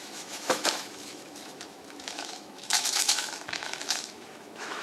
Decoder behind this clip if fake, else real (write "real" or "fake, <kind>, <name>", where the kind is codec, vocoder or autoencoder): fake, autoencoder, DAC-VAE